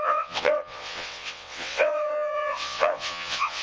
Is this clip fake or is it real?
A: fake